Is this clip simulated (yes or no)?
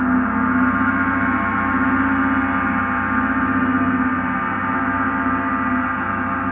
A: no